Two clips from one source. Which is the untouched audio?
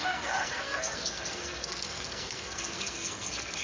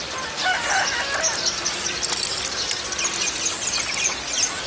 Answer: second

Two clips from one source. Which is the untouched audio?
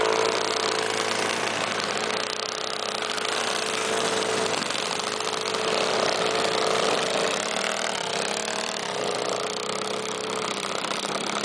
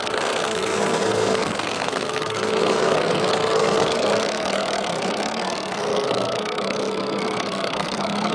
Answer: first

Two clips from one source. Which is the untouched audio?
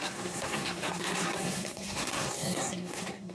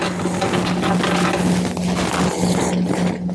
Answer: second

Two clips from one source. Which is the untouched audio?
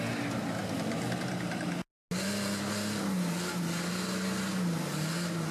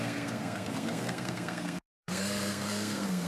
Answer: first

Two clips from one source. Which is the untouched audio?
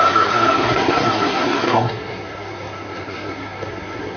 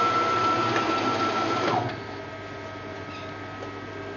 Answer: second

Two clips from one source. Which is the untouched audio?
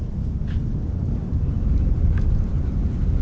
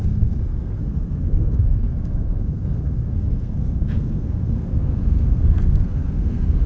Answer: first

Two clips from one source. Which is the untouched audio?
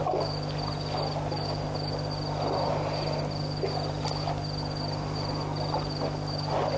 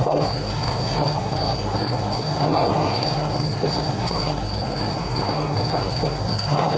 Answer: first